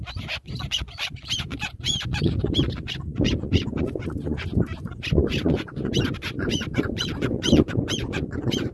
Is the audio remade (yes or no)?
yes